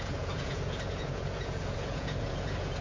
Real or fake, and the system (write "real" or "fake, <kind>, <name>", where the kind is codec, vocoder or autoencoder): fake, vocoder, Vocos